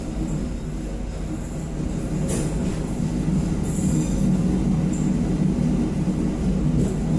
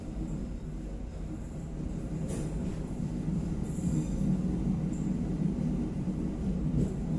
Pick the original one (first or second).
first